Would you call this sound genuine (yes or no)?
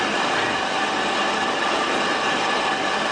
yes